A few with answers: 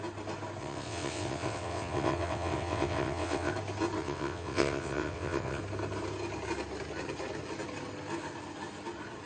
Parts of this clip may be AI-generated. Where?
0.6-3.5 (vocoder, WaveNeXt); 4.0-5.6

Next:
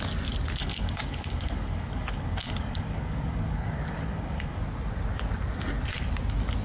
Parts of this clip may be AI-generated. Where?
0.6-4.6 (codec, DAC)

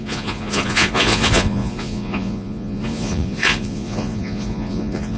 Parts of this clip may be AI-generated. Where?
0.0-5.2 (vocoder, Vocos)

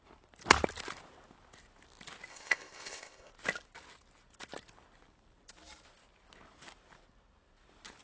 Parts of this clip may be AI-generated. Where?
2.3-3.3 (codec, ZipCodec)

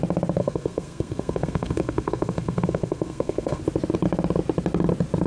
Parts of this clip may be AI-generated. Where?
0.4-3.6 (codec, SNAC)

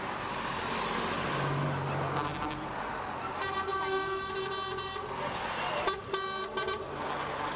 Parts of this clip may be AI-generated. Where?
none

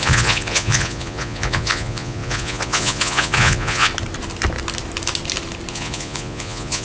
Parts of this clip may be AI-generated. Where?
0.0-3.9 (vocoder, Vocos); 5.7-6.8